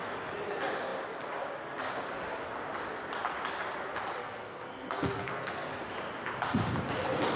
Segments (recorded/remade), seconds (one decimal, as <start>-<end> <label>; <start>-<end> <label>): 0.0-4.2 recorded; 4.2-5.7 remade; 5.7-7.4 recorded